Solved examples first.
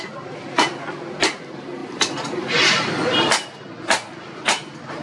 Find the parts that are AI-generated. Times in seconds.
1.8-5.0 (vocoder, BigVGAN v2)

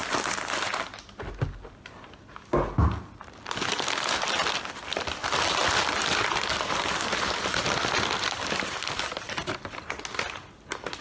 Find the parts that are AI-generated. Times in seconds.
3.2-11.0 (vocoder, BigVGAN v2)

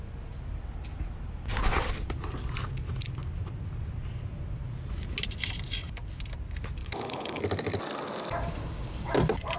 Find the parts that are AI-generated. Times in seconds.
6.8-7.4 (codec, HILCodec)

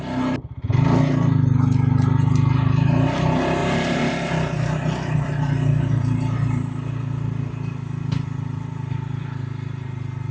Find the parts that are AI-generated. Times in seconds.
3.6-7.4 (vocoder, BigVGAN v2)

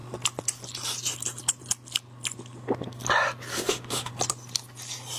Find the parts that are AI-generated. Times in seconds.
3.5-4.1 (autoencoder, DAC-VAE)

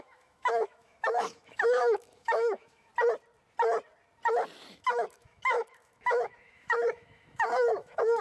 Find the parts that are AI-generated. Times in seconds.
0.0-2.9 (autoencoder, DAC-VAE); 4.7-8.2